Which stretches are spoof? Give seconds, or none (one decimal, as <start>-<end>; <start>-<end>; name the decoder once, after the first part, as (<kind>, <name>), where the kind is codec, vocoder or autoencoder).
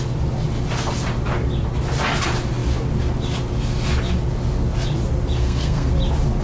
5.4-5.9 (codec, SNAC)